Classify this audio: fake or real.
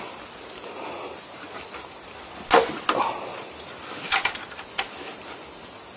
real